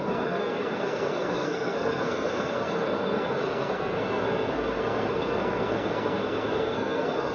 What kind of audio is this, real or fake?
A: fake